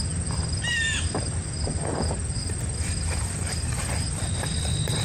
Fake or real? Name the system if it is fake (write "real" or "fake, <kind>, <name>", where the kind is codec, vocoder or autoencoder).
real